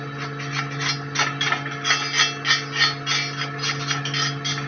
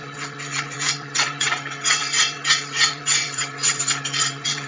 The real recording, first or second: first